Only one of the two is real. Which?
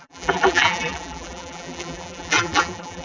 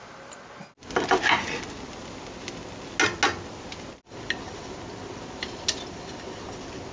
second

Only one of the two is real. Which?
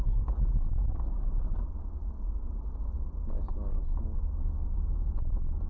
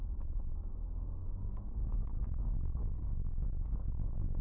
first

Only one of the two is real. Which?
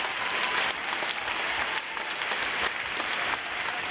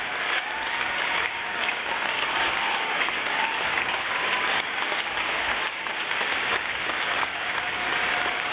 first